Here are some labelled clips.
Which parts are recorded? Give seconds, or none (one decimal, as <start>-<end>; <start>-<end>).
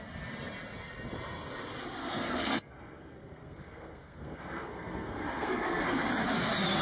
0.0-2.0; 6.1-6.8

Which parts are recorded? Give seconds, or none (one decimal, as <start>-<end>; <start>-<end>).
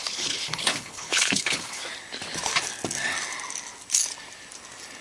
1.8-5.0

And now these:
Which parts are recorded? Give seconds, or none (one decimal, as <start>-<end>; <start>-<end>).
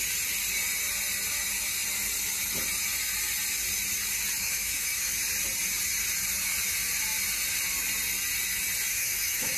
0.0-4.4; 5.1-8.9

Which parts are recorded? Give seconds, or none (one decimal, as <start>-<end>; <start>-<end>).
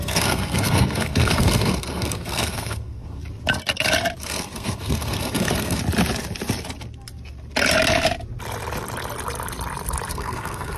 3.2-4.2; 5.8-10.1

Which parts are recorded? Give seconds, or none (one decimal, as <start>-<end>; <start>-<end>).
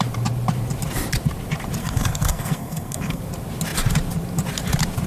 0.0-1.8; 3.2-5.1